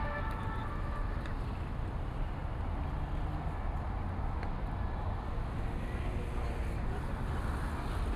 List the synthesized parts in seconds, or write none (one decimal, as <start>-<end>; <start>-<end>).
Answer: none